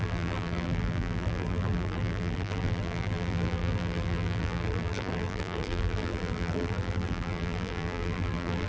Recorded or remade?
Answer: remade